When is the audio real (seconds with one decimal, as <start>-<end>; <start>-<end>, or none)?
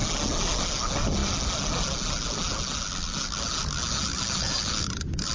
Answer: 0.0-5.3